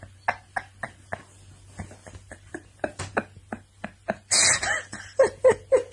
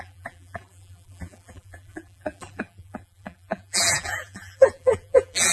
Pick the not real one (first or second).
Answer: second